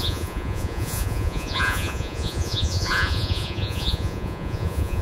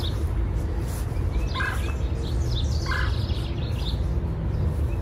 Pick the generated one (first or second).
first